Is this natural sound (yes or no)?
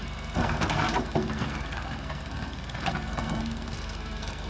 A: no